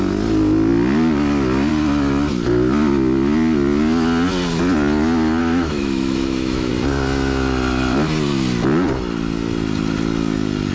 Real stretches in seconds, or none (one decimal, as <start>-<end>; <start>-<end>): 0.0-5.4; 6.7-10.7